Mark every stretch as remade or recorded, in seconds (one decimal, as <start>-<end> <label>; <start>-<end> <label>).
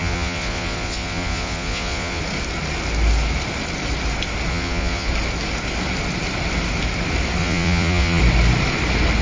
0.0-2.2 remade; 2.2-4.5 recorded; 4.5-5.1 remade; 5.1-7.4 recorded; 7.4-8.2 remade; 8.2-9.2 recorded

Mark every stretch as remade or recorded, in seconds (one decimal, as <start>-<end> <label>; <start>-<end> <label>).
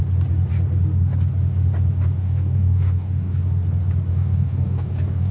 0.0-2.2 recorded; 2.2-3.4 remade; 3.4-4.1 recorded; 4.1-5.3 remade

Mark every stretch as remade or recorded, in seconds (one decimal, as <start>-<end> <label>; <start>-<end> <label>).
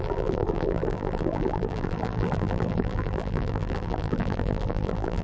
0.0-5.2 remade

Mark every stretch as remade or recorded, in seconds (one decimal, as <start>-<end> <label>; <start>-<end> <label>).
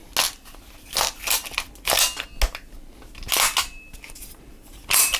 0.0-5.2 recorded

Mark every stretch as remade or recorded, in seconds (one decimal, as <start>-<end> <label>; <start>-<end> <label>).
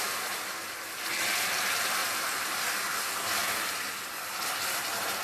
0.0-2.0 recorded; 2.0-2.6 remade; 2.6-5.2 recorded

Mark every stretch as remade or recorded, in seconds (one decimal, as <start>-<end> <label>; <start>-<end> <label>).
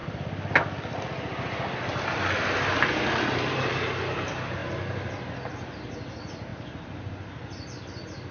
0.0-0.6 remade; 0.6-1.9 recorded; 1.9-3.7 remade; 3.7-4.6 recorded; 4.6-5.7 remade; 5.7-6.5 recorded; 6.5-7.1 remade; 7.1-8.3 recorded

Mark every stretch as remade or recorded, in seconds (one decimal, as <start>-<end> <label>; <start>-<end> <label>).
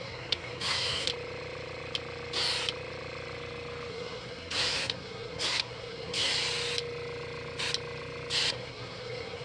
0.0-1.1 remade; 1.1-3.9 recorded; 3.9-6.3 remade; 6.3-8.5 recorded; 8.5-9.4 remade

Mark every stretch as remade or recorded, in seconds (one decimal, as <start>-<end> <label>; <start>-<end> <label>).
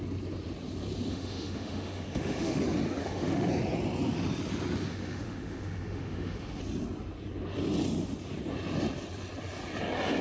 0.0-1.1 recorded; 1.1-2.6 remade; 2.6-3.0 recorded; 3.0-3.5 remade; 3.5-4.9 recorded; 4.9-6.6 remade; 6.6-10.2 recorded